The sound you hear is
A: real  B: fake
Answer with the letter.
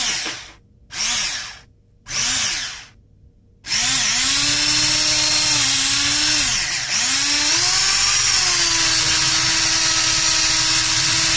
A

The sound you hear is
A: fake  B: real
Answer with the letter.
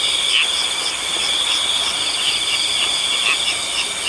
B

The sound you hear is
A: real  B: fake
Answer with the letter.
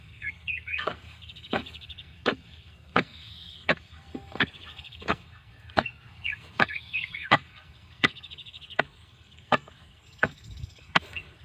B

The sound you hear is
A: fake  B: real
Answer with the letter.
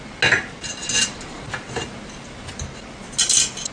B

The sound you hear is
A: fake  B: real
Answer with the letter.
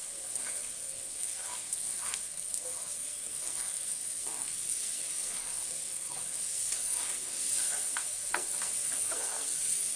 A